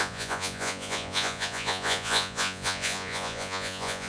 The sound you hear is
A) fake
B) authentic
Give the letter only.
A